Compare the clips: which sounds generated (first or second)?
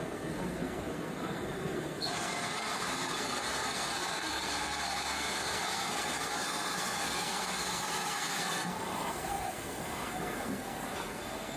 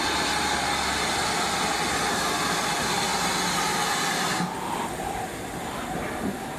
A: first